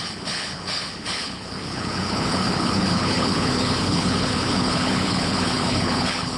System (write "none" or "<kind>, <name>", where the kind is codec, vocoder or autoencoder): codec, HILCodec